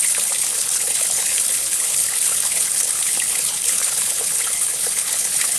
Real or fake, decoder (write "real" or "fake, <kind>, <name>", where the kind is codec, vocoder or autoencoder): fake, codec, HILCodec